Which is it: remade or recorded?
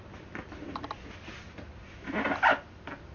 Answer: recorded